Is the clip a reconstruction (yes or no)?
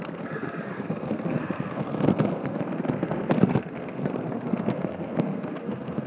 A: yes